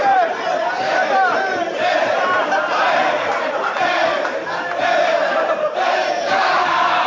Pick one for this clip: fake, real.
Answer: fake